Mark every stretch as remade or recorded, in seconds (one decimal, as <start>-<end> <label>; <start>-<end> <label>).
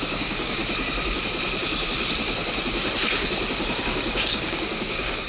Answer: 0.0-0.6 remade; 0.6-3.8 recorded; 3.8-5.3 remade